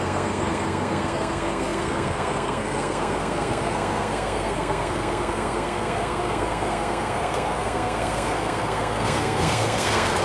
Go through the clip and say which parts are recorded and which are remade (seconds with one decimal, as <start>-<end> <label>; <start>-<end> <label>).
0.0-10.2 remade